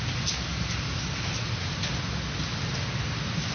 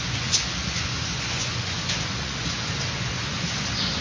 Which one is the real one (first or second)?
first